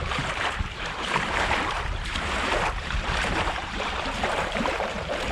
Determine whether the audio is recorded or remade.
remade